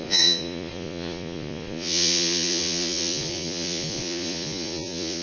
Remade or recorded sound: remade